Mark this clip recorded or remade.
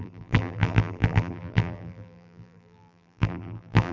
remade